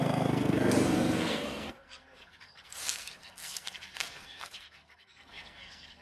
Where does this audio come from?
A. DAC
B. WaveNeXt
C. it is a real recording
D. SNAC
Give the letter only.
D